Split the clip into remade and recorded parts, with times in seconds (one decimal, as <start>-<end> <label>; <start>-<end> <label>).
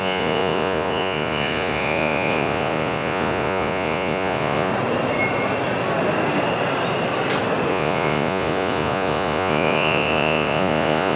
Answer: 0.0-4.7 remade; 4.7-7.7 recorded; 7.7-11.2 remade